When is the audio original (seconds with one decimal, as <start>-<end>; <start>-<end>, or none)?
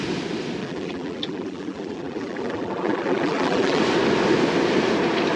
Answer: 0.0-0.6; 3.8-5.4